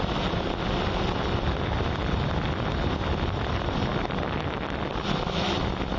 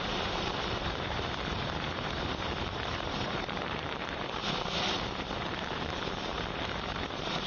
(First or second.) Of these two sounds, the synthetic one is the second